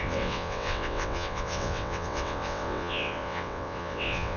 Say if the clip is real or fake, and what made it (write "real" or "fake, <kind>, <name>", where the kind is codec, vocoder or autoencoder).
fake, vocoder, WaveNeXt